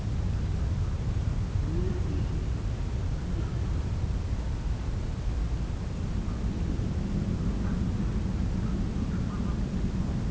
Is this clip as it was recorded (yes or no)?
yes